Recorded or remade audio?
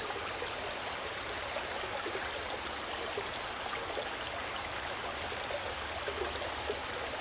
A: recorded